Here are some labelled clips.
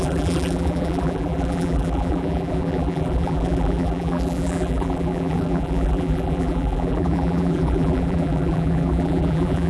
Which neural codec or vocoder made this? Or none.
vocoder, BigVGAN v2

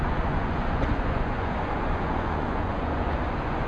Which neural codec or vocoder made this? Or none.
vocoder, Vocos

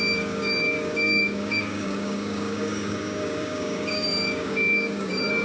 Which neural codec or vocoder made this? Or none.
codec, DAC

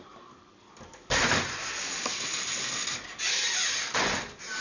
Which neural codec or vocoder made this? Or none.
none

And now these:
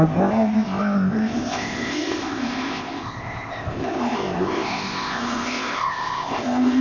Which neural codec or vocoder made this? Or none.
codec, ZipCodec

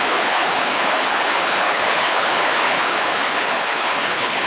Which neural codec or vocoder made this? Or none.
codec, HILCodec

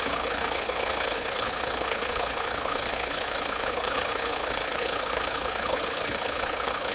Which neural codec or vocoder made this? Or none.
codec, HILCodec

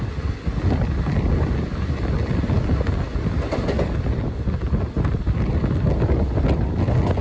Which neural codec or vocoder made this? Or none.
none